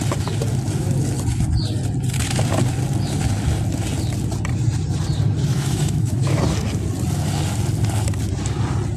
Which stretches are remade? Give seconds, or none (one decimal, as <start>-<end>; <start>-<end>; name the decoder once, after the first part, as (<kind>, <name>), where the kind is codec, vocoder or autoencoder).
5.5-6.4 (autoencoder, DAC-VAE)